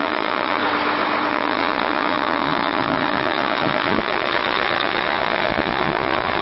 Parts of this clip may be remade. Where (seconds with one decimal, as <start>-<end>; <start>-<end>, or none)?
0.0-0.6; 1.3-6.4